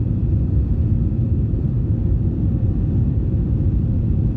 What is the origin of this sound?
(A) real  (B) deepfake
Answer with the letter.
B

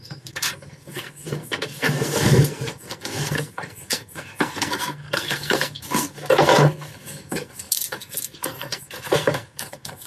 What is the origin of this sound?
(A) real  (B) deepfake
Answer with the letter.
B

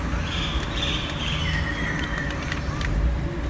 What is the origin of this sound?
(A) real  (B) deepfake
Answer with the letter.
B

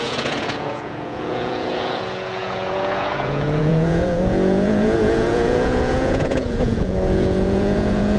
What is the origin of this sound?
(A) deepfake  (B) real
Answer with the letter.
A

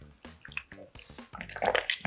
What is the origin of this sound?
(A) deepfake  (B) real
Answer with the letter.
B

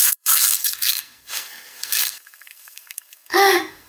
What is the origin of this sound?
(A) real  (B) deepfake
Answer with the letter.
B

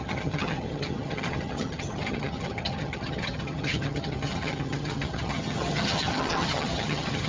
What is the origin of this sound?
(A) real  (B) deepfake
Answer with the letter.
B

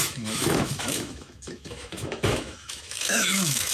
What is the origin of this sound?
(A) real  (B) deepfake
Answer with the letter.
B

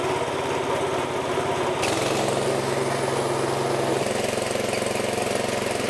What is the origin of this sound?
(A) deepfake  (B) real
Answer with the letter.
B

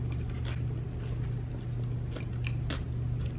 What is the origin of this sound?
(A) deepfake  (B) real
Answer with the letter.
B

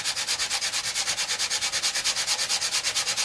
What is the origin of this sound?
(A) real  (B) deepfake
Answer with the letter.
A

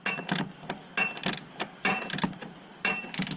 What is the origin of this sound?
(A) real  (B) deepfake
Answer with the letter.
A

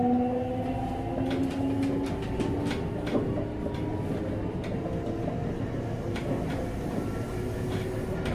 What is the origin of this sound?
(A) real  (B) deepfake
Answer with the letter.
A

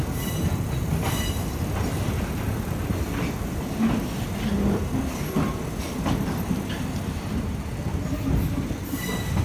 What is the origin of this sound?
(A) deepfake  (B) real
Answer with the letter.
B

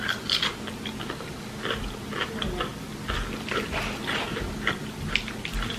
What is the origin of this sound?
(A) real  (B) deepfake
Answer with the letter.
A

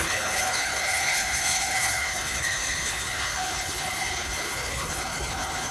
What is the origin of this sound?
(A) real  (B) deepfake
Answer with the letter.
B